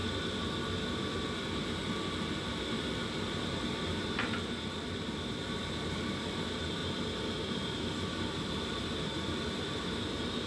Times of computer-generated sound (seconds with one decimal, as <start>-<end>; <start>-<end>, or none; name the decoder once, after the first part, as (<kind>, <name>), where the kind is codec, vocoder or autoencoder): 2.2-10.5 (vocoder, BigVGAN v2)